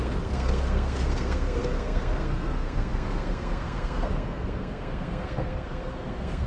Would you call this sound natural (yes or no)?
no